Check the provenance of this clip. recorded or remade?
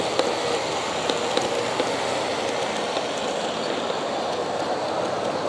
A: recorded